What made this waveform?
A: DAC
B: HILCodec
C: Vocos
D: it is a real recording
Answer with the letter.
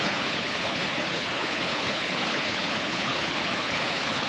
B